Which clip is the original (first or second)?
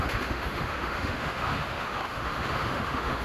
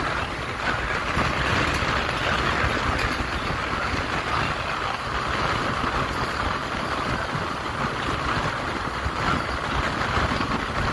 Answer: second